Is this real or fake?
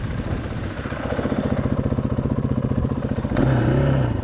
fake